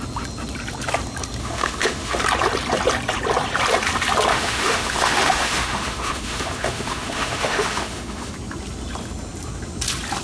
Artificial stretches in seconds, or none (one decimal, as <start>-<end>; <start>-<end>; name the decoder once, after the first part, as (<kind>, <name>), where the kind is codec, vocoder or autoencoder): 1.4-2.2 (autoencoder, DAC-VAE); 4.3-8.3